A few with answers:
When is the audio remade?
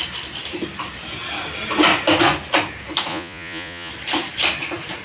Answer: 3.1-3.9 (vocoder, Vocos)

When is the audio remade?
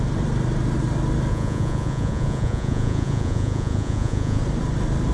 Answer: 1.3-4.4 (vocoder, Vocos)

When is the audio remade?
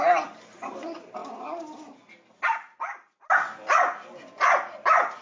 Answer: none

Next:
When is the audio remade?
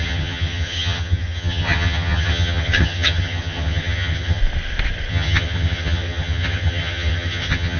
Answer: 0.0-4.4 (vocoder, HiFi-GAN); 5.1-7.8